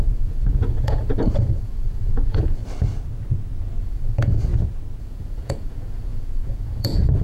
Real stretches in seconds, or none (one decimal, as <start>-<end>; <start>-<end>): 2.6-3.8; 4.5-5.0